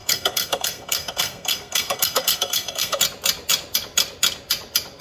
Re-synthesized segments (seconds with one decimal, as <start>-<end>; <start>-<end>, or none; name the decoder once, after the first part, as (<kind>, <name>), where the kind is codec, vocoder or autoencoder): 0.0-3.0 (codec, SNAC)